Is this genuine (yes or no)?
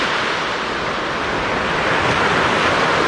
yes